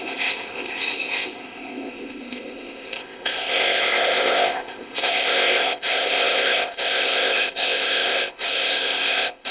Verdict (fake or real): fake